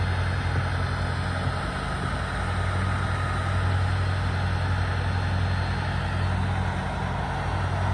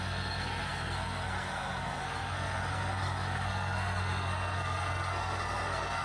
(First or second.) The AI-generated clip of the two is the second